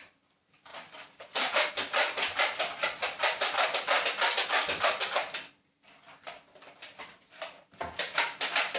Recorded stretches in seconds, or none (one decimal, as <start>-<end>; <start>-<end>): 0.0-0.7; 1.7-8.8